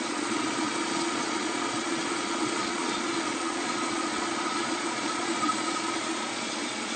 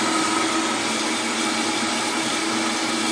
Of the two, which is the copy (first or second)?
first